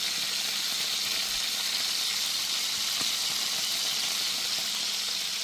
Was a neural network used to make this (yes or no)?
no